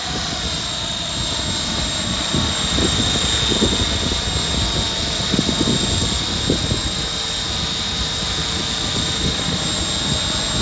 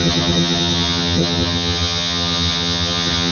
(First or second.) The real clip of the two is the first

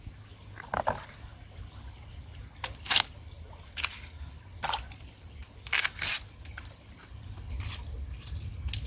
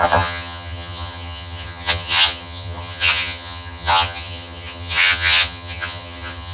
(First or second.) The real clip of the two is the first